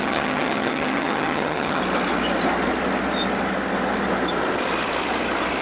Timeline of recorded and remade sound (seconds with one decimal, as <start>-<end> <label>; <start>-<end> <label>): 0.0-1.8 remade; 1.8-5.6 recorded